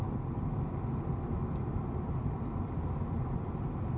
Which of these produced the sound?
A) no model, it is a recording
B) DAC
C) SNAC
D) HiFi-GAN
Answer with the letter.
A